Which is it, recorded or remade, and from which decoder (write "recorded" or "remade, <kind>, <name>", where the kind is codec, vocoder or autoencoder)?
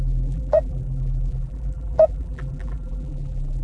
remade, vocoder, BigVGAN v2